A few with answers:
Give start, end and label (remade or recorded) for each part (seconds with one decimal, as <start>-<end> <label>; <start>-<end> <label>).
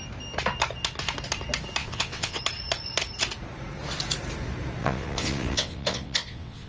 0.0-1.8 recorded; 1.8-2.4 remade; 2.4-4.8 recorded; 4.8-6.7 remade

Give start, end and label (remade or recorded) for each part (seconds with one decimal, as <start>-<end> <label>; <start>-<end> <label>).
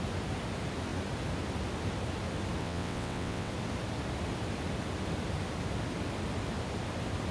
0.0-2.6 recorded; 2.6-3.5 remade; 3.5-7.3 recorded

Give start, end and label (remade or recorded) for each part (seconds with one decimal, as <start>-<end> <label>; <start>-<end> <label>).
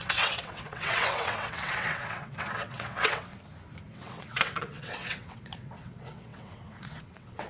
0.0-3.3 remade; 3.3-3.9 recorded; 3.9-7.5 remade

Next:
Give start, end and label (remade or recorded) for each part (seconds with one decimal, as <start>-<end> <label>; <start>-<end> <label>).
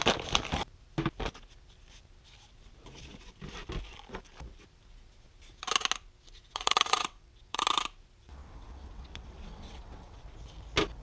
0.0-6.5 recorded; 6.5-7.6 remade; 7.6-8.2 recorded; 8.2-10.2 remade; 10.2-11.0 recorded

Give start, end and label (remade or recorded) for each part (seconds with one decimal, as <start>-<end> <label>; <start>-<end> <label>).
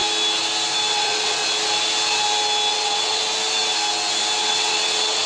0.0-0.9 recorded; 0.9-1.4 remade; 1.4-2.7 recorded; 2.7-3.2 remade; 3.2-4.4 recorded; 4.4-5.3 remade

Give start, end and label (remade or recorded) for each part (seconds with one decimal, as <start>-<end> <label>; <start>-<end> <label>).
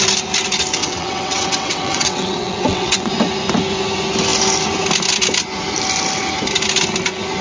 0.0-0.8 recorded; 0.8-3.1 remade; 3.1-7.4 recorded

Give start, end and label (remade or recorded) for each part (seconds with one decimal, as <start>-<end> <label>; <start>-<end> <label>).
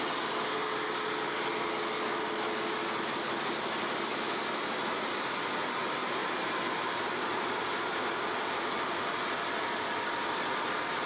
0.0-11.1 recorded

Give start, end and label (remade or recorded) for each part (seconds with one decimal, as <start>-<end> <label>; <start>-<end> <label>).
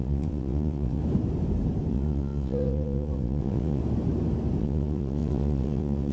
0.0-1.0 remade; 1.0-1.9 recorded; 1.9-3.8 remade; 3.8-4.6 recorded; 4.6-6.1 remade